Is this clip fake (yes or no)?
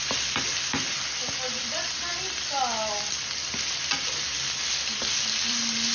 no